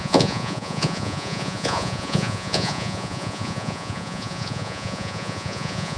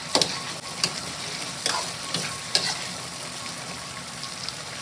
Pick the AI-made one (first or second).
first